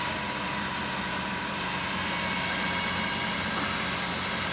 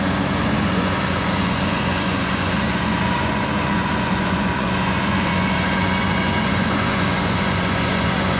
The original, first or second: first